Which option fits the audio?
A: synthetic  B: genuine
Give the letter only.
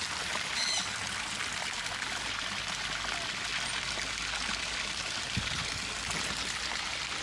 B